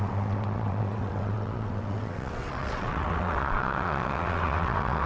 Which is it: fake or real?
fake